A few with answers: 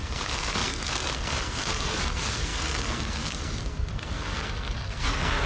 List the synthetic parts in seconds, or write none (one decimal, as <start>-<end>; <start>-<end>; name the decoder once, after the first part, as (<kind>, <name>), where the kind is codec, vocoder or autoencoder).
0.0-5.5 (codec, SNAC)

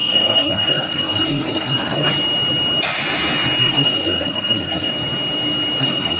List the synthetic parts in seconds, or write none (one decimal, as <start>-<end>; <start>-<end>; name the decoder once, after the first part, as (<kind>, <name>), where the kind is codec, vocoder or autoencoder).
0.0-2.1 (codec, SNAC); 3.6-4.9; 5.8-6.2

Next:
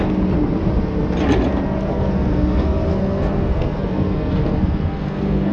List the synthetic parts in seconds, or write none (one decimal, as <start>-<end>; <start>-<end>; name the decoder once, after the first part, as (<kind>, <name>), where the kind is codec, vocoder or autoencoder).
1.9-5.5 (codec, SNAC)

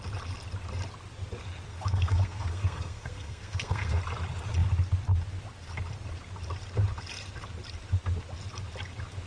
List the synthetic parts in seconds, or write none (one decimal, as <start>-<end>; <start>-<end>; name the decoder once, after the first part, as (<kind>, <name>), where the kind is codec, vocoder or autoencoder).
1.7-4.0 (codec, SNAC)

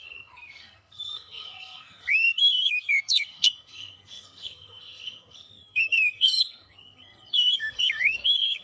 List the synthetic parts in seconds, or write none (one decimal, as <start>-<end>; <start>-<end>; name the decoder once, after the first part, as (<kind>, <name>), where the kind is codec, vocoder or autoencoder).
0.0-8.6 (codec, SNAC)

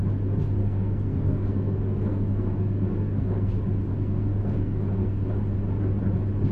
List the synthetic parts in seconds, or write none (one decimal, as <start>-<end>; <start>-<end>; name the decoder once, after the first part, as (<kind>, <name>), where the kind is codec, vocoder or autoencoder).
0.6-3.5 (codec, SNAC); 3.9-5.3